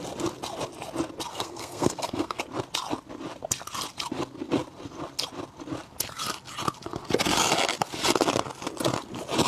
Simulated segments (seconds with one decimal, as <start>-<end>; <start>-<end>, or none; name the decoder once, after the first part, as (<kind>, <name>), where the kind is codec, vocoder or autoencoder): 1.3-2.4 (codec, SNAC)